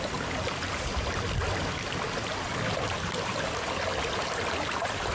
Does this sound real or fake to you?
real